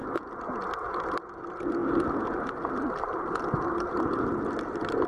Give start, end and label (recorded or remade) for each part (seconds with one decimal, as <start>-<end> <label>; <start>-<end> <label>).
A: 0.0-5.1 recorded

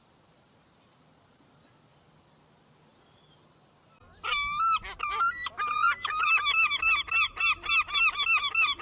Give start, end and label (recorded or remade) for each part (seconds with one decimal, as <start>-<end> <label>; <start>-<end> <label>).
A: 0.0-8.8 recorded

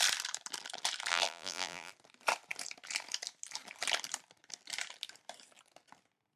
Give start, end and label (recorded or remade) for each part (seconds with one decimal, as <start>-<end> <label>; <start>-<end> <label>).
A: 0.0-1.1 recorded; 1.1-1.9 remade; 1.9-6.4 recorded